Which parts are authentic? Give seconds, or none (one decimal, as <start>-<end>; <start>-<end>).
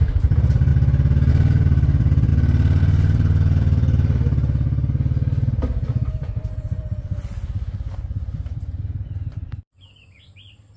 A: 0.7-1.3; 2.3-2.8